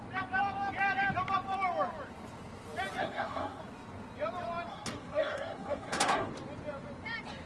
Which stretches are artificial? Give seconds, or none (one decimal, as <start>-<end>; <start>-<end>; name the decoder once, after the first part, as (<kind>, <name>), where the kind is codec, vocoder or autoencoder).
3.0-3.6 (codec, SNAC); 4.7-6.3